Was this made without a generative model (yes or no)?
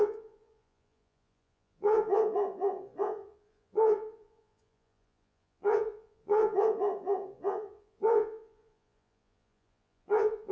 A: no